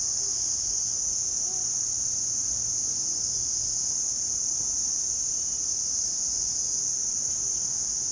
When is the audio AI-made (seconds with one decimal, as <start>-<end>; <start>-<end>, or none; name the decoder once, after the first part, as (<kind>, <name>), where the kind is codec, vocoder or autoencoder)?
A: 0.5-1.2 (codec, HILCodec)